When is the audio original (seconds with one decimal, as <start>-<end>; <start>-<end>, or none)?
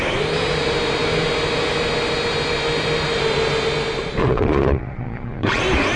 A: 0.0-4.2; 5.6-6.0